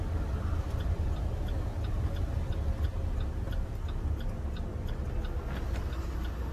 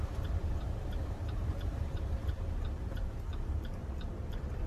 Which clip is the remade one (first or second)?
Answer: second